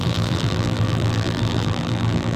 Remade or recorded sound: remade